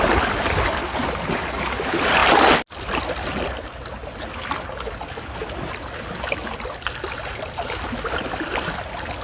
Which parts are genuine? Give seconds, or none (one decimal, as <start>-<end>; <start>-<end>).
0.0-9.2